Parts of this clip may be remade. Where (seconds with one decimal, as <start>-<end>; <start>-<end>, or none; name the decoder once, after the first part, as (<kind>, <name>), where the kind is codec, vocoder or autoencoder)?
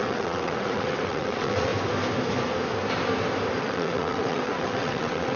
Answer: 0.0-1.7 (vocoder, WaveNeXt); 3.6-5.4